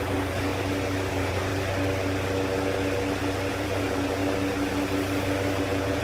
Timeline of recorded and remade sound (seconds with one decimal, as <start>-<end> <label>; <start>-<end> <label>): 0.0-0.5 remade; 0.5-1.1 recorded; 1.1-1.5 remade; 1.5-3.5 recorded; 3.5-4.2 remade; 4.2-5.6 recorded; 5.6-6.0 remade